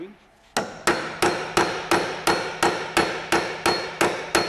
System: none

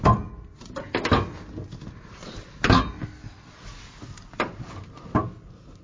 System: none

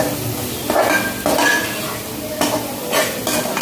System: none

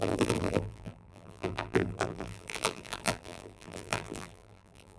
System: vocoder, BigVGAN v2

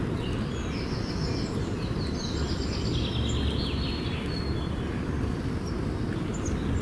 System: none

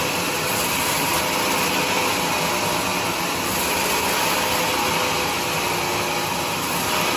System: none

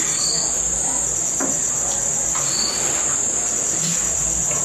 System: vocoder, BigVGAN v2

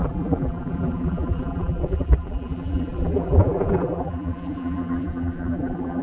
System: vocoder, BigVGAN v2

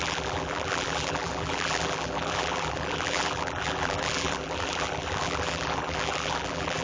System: vocoder, BigVGAN v2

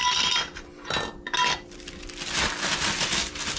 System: none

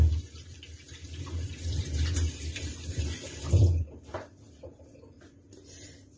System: vocoder, BigVGAN v2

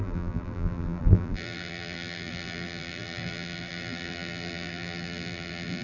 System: vocoder, BigVGAN v2